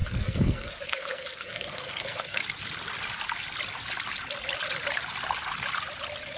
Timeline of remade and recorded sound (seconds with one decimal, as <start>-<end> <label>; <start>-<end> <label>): 0.0-2.4 remade; 2.4-6.4 recorded